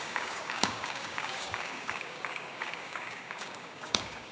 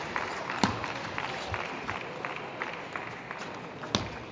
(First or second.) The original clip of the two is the second